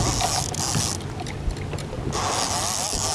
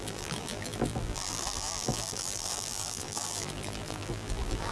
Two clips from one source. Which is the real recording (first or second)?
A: first